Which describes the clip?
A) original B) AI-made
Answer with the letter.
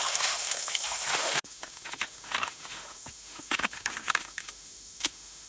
B